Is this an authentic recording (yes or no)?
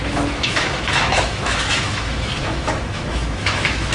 no